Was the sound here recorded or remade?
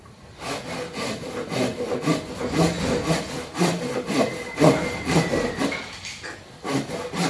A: recorded